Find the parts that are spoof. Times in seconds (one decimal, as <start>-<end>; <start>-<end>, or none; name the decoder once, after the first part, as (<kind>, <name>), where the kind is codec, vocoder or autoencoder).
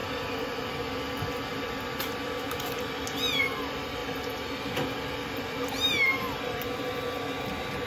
none